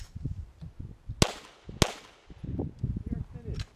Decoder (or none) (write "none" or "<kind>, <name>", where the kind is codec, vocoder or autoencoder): none